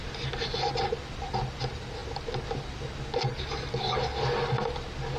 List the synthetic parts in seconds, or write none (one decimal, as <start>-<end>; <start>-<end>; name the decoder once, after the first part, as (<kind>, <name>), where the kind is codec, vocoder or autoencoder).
none